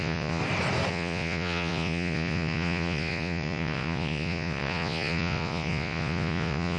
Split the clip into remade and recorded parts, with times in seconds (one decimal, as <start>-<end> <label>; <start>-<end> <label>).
0.0-0.4 remade; 0.4-0.9 recorded; 0.9-6.8 remade

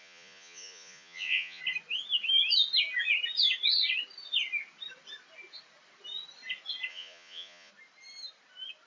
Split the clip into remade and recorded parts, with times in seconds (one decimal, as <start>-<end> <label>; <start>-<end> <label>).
0.0-1.6 remade; 1.6-6.9 recorded; 6.9-7.7 remade; 7.7-8.9 recorded

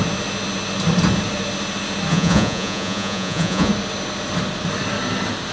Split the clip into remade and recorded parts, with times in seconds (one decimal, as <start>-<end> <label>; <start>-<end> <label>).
0.0-2.1 recorded; 2.1-3.7 remade; 3.7-5.5 recorded